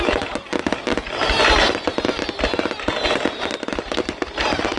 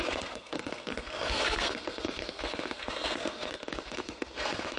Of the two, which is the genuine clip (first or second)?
first